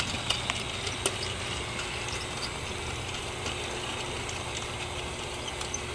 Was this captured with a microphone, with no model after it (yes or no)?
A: yes